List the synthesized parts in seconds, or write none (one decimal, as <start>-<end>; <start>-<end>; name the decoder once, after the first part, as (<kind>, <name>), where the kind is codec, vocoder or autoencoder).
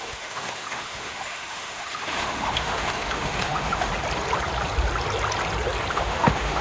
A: 0.0-3.9 (autoencoder, DAC-VAE); 5.9-6.6